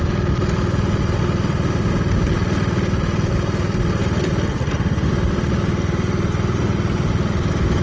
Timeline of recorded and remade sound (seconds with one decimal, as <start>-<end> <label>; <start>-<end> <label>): 0.0-7.8 recorded